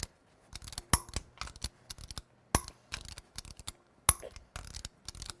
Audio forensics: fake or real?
real